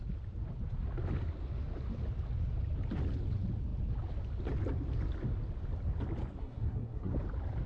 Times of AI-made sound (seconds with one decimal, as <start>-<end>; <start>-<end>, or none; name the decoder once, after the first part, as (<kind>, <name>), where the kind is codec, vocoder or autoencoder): 6.4-7.1 (codec, SNAC)